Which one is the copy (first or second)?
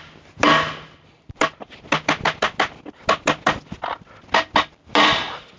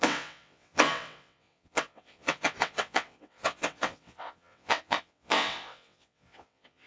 second